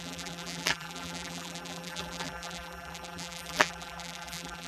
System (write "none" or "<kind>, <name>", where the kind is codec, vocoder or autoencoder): vocoder, BigVGAN v2